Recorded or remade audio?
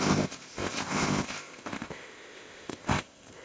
remade